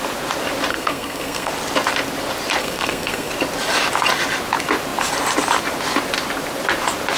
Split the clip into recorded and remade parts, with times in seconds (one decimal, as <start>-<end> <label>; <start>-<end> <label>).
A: 0.0-0.7 recorded; 0.7-1.5 remade; 1.5-2.6 recorded; 2.6-3.3 remade; 3.3-7.2 recorded